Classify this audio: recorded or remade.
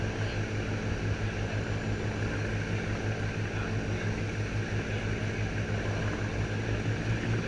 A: recorded